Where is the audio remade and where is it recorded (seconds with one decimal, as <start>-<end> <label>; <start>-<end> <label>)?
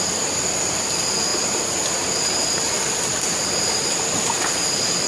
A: 0.0-5.1 recorded